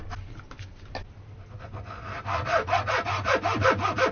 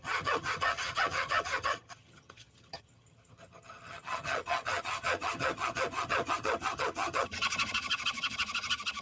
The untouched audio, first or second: first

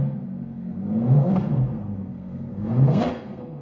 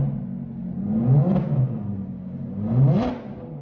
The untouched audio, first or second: second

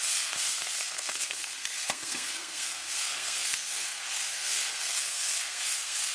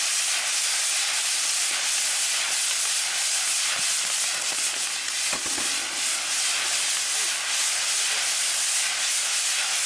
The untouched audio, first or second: second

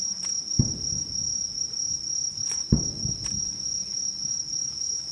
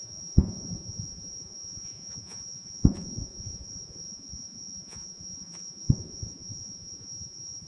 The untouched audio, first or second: first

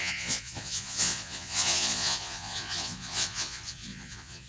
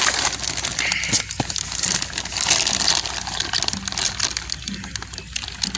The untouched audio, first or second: second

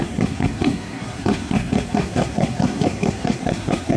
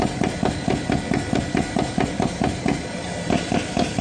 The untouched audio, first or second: second